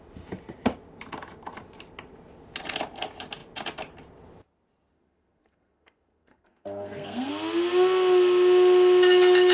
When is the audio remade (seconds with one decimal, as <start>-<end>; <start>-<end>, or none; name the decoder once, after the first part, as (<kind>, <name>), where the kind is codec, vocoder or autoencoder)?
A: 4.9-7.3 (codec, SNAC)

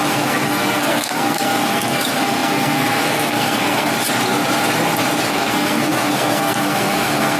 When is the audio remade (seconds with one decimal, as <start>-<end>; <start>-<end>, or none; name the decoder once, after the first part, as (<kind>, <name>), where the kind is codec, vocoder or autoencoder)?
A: 0.0-3.9 (codec, SNAC); 5.3-7.4

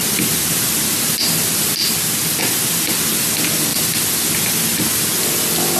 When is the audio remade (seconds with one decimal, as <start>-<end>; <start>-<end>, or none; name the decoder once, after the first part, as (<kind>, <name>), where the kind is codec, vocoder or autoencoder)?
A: 3.7-4.3 (vocoder, BigVGAN v2)